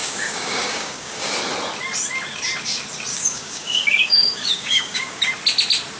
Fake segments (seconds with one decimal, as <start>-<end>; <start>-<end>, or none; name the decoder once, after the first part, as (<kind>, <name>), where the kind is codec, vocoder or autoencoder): 0.0-1.3 (codec, DAC); 3.1-5.3